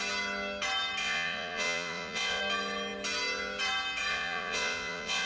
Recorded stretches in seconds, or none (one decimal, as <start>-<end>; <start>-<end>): 0.0-1.0; 2.4-4.1